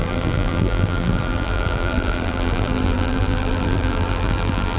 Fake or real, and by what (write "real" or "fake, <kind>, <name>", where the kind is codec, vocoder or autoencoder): fake, vocoder, BigVGAN v2